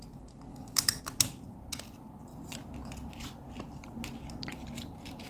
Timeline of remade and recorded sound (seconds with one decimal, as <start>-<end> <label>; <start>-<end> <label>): 0.0-0.5 recorded; 0.5-1.0 remade; 1.0-5.3 recorded